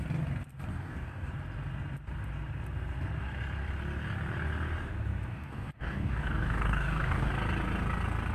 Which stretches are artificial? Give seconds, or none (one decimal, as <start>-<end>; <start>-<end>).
0.7-1.3; 5.3-7.3